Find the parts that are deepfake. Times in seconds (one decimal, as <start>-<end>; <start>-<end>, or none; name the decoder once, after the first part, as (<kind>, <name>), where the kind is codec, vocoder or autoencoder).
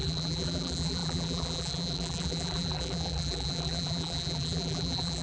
0.0-5.2 (vocoder, BigVGAN v2)